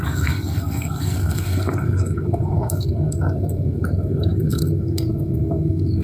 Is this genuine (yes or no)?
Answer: no